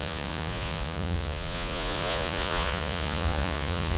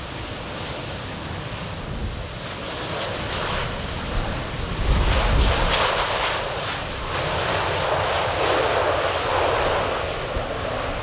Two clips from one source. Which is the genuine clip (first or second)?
second